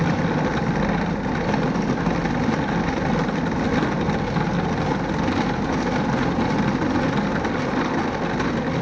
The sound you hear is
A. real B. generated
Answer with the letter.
A